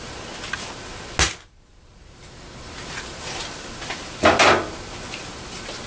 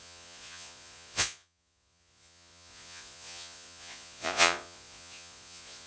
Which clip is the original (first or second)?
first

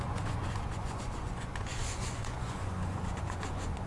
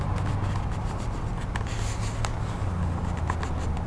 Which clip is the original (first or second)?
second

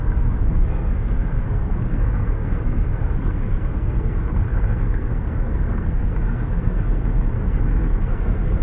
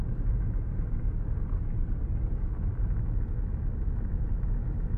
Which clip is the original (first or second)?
second